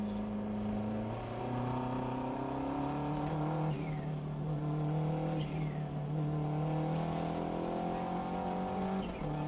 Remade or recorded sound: recorded